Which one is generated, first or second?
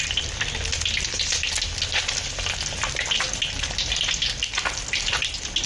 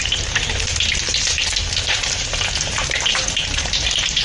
second